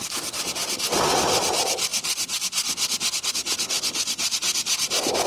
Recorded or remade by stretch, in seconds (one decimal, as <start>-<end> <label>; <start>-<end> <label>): 0.0-5.3 recorded